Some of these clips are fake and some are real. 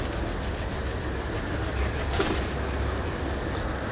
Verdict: real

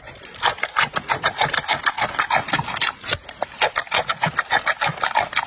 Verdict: real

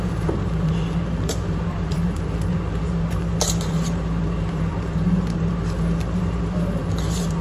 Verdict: fake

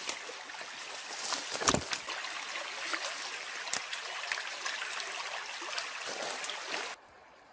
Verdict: real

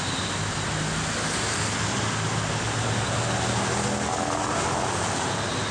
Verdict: real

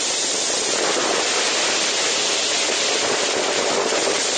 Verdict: fake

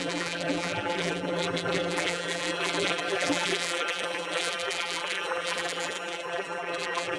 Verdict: fake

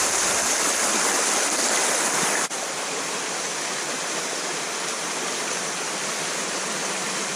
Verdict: fake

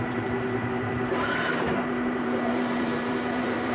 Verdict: fake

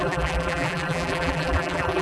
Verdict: fake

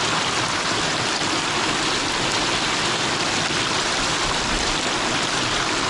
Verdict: real